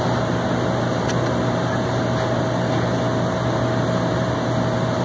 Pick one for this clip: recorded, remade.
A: recorded